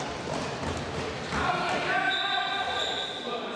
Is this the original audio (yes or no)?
yes